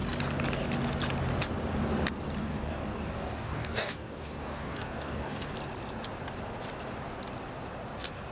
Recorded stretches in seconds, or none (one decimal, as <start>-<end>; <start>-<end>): 0.0-2.4; 5.5-8.3